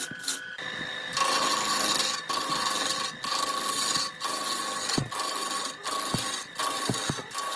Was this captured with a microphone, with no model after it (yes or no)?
yes